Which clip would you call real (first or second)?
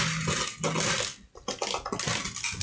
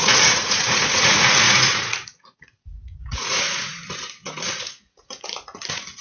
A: first